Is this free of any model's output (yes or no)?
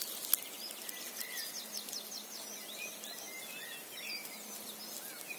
yes